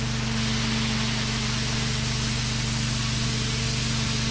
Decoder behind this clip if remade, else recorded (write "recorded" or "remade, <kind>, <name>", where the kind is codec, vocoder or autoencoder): recorded